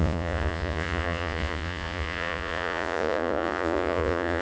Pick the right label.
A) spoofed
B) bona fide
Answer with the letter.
A